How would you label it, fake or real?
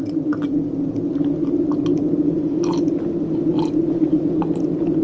real